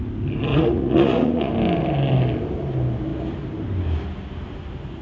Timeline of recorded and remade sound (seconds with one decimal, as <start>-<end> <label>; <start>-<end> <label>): 0.0-0.5 recorded; 0.5-1.5 remade; 1.5-5.0 recorded